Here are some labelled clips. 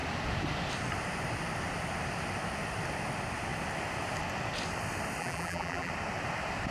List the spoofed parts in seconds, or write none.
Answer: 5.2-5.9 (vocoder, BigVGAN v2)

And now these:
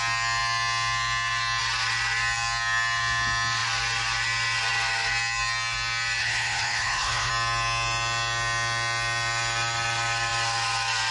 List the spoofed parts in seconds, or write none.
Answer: 6.2-7.3 (codec, HILCodec)

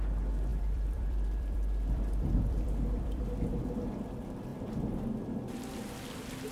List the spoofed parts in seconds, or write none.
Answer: 0.5-3.2 (vocoder, BigVGAN v2); 4.5-5.0

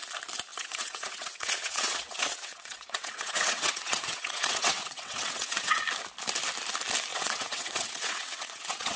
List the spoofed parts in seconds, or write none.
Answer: 0.5-5.8 (vocoder, WaveNeXt); 7.1-9.0